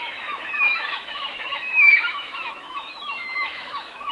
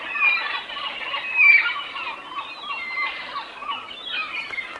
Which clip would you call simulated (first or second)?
first